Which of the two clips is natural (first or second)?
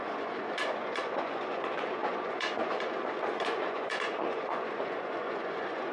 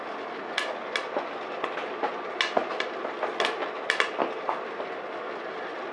second